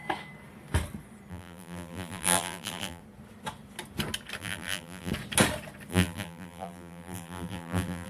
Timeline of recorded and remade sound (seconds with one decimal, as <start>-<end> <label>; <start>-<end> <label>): 0.0-1.3 recorded; 1.3-3.0 remade; 3.0-4.4 recorded; 4.4-5.1 remade; 5.1-5.9 recorded; 5.9-8.1 remade